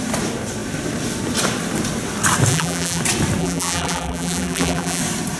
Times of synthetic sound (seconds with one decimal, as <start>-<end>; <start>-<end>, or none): 2.5-3.0; 3.4-5.0